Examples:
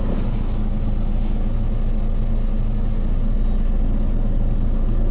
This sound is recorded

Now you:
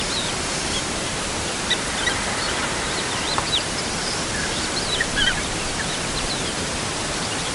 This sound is remade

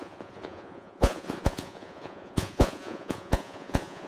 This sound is remade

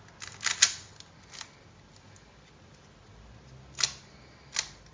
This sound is recorded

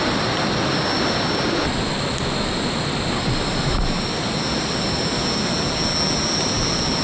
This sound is recorded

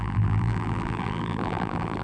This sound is remade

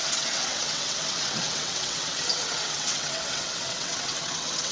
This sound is remade